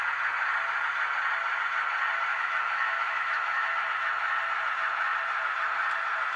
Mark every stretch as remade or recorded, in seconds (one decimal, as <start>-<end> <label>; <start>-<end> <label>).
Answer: 0.0-2.3 recorded; 2.3-3.8 remade; 3.8-6.4 recorded